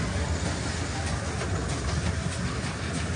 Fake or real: real